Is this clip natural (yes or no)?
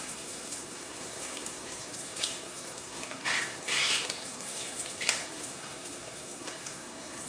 no